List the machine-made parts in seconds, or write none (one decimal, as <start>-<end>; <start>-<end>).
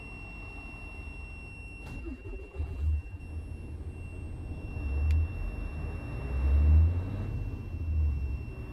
2.0-3.2